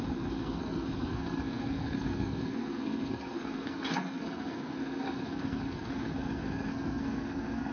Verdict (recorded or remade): remade